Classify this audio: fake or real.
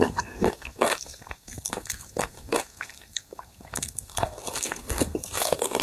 fake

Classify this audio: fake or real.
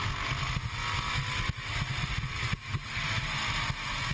real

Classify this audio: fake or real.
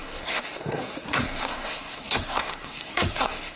fake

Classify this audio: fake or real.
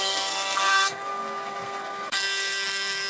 fake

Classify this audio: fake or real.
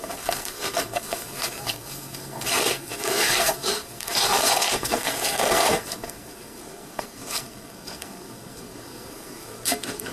fake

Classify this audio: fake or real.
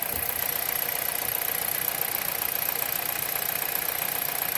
real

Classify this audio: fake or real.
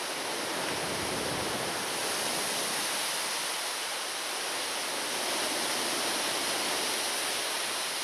real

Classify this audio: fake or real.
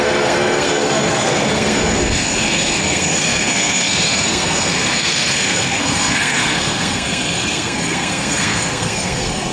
fake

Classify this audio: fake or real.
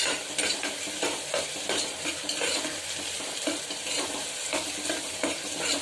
real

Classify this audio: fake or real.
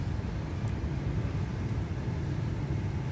real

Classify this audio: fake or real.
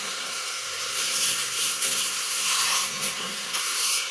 fake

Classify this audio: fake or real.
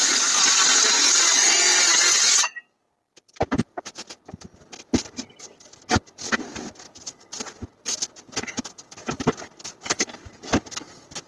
real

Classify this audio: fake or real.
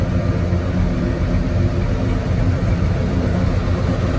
real